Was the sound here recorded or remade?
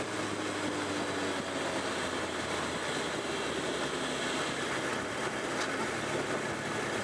recorded